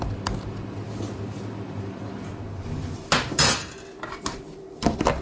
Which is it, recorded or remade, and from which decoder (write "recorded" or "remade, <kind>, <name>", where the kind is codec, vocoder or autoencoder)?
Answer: recorded